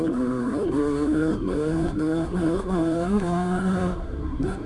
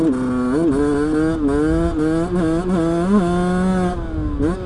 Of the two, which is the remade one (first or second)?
first